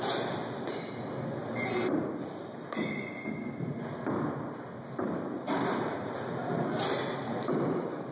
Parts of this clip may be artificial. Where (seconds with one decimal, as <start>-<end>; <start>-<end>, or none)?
0.0-0.4; 4.9-8.1